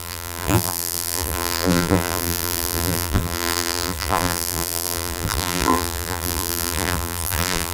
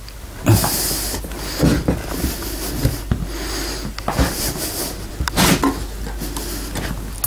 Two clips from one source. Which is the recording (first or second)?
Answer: second